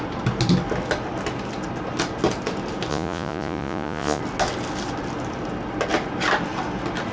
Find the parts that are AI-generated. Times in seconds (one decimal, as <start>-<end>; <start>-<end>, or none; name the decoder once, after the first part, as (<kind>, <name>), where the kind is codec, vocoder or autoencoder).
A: 2.9-4.2 (vocoder, Vocos)